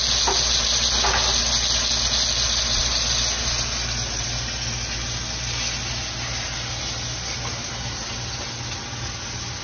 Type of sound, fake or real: real